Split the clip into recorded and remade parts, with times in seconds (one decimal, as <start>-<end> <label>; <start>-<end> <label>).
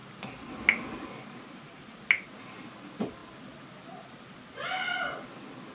0.0-0.5 remade; 0.5-5.7 recorded